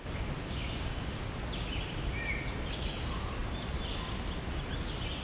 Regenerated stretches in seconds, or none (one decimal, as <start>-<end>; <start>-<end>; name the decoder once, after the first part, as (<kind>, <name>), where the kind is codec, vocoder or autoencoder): 0.4-1.3 (codec, DAC)